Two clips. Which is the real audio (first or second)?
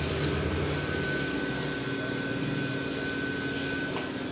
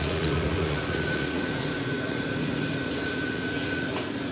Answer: first